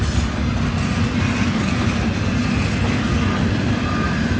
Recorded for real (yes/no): yes